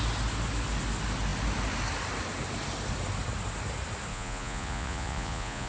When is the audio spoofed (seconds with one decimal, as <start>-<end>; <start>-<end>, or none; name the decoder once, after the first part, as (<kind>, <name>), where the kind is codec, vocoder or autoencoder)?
4.1-5.7 (vocoder, Vocos)